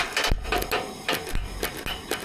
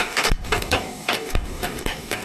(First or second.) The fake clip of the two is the second